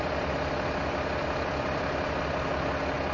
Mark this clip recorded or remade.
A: recorded